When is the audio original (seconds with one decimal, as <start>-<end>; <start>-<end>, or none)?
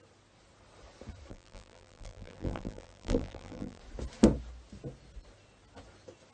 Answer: 0.0-1.3; 3.8-6.3